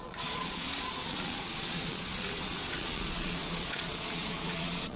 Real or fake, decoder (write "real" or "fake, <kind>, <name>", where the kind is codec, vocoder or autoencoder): fake, vocoder, Vocos